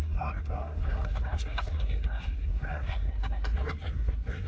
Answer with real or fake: fake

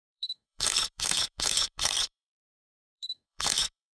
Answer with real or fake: fake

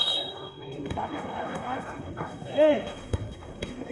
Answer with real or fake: fake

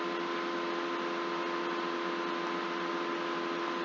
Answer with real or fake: real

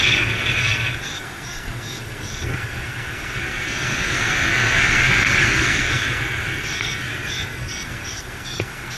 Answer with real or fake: fake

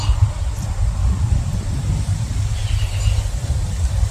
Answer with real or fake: real